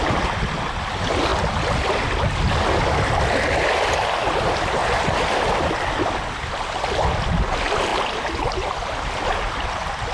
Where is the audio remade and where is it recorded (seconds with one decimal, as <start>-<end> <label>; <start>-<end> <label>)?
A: 0.0-10.1 recorded